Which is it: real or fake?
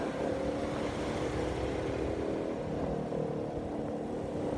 real